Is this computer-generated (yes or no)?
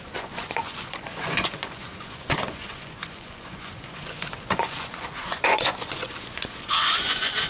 yes